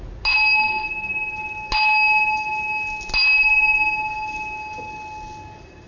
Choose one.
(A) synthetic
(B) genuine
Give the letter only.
B